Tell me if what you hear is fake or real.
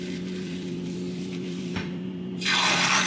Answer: fake